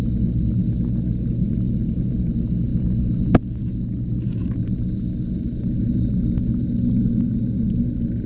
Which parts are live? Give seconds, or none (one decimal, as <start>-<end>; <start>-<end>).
0.0-8.3

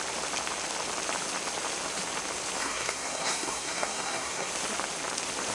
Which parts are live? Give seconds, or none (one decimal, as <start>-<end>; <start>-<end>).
0.0-2.6; 4.5-5.5